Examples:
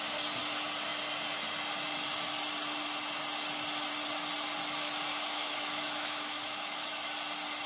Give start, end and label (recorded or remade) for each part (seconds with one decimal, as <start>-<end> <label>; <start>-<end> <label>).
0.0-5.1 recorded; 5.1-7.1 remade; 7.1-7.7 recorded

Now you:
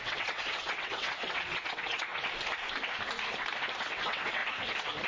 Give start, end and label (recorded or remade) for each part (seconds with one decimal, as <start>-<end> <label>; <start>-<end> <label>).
0.0-2.1 remade; 2.1-3.8 recorded; 3.8-4.4 remade; 4.4-5.1 recorded

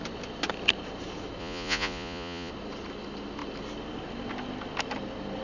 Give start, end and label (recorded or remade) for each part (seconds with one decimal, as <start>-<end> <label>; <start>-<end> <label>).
0.0-1.4 recorded; 1.4-2.5 remade; 2.5-5.4 recorded

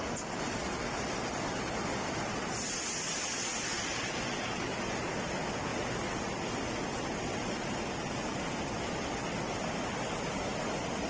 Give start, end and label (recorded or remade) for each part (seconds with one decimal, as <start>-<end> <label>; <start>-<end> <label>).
0.0-11.1 recorded

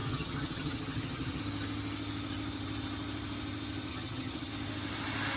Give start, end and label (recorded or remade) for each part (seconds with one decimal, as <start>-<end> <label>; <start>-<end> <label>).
0.0-1.4 remade; 1.4-3.9 recorded; 3.9-4.5 remade; 4.5-5.4 recorded

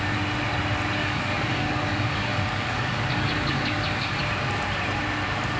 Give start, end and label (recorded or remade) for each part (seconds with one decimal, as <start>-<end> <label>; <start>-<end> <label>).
0.0-1.0 recorded; 1.0-4.2 remade; 4.2-5.6 recorded

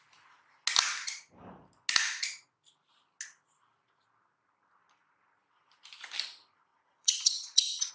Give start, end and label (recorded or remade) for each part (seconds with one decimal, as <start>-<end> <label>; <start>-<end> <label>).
0.0-6.7 recorded; 6.7-7.9 remade

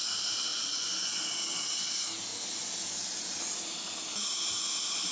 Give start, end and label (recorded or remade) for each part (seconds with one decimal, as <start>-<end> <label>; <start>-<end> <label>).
0.0-0.5 recorded; 0.5-1.2 remade; 1.2-5.1 recorded